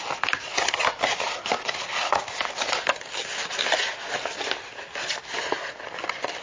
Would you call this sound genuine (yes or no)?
yes